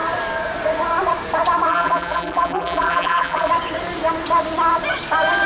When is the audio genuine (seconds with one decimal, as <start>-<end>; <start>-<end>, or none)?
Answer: 0.0-1.7; 3.5-5.5